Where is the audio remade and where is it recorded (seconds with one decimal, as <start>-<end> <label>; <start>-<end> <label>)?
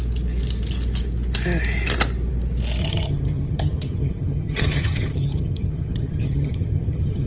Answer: 0.0-2.8 recorded; 2.8-7.3 remade